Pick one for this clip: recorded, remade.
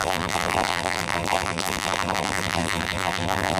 remade